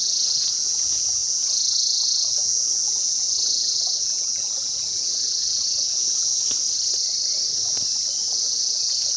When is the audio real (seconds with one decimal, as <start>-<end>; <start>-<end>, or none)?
6.3-8.2